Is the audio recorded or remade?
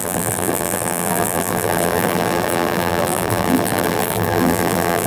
remade